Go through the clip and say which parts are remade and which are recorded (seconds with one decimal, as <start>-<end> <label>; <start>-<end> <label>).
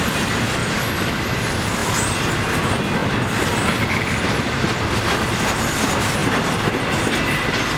0.0-0.6 recorded; 0.6-1.1 remade; 1.1-3.0 recorded; 3.0-5.4 remade; 5.4-6.2 recorded; 6.2-7.0 remade; 7.0-7.8 recorded